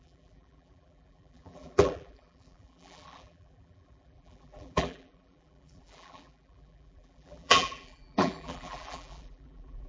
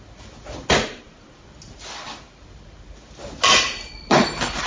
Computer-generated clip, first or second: first